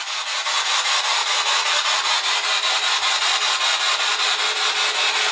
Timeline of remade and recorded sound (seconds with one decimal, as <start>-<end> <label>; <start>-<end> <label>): 0.0-5.3 recorded